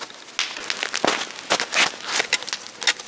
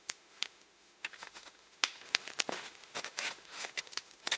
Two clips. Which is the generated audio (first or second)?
second